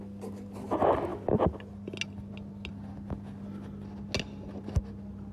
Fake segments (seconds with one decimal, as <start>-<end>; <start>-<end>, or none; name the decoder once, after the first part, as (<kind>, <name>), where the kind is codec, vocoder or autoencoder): none